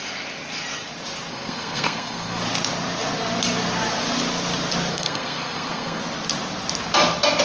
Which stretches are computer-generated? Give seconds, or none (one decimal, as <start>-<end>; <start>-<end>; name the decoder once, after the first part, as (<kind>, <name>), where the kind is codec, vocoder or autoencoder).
1.3-2.4 (codec, SNAC); 4.9-6.0